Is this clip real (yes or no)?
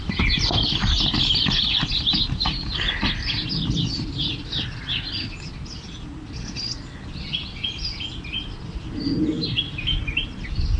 yes